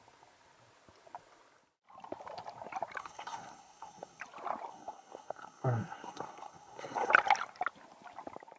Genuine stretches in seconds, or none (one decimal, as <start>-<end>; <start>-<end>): 0.0-3.0; 4.2-4.7; 7.1-8.6